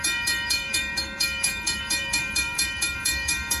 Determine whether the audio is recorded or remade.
remade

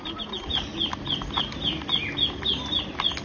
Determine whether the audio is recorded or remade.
recorded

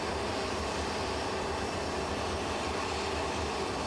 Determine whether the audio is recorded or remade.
remade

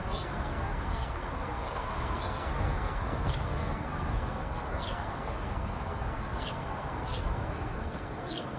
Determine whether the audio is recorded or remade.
remade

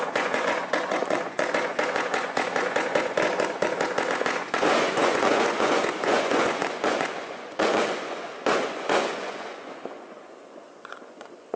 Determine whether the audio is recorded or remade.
remade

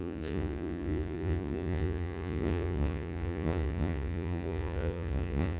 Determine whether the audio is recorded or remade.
remade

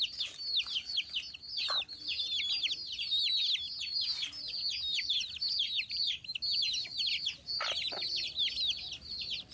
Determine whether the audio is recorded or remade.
recorded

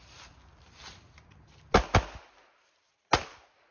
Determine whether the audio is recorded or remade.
recorded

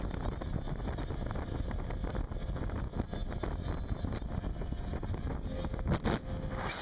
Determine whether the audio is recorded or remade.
recorded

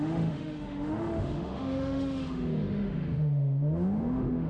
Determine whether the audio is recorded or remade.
remade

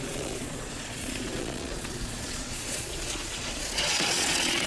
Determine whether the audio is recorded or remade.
remade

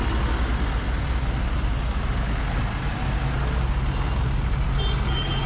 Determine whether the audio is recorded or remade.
recorded